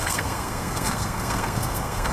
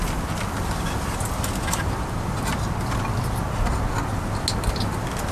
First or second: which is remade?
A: first